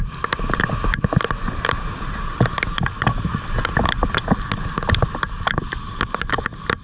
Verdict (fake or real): real